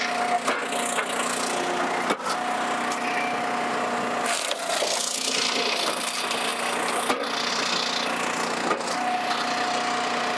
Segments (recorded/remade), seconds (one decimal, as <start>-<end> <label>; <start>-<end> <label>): 0.0-10.4 recorded